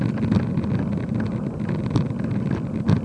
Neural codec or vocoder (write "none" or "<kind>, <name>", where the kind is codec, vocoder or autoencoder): vocoder, BigVGAN v2